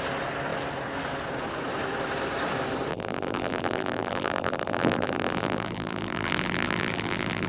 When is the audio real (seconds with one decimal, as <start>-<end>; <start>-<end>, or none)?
0.0-2.9